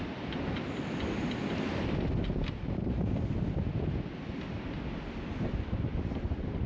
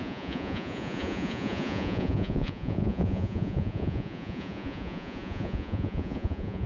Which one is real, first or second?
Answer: first